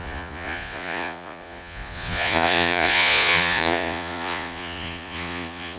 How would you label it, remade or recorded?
remade